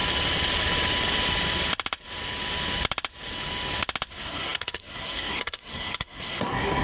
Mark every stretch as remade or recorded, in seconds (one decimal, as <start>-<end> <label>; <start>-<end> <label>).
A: 0.0-4.1 recorded; 4.1-6.8 remade